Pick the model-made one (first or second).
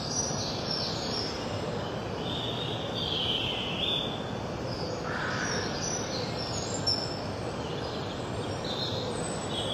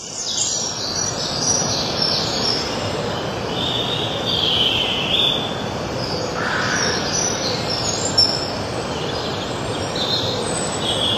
second